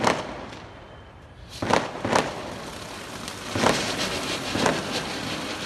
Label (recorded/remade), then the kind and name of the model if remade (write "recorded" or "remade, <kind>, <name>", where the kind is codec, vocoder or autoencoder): recorded